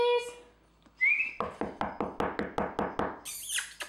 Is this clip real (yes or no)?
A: yes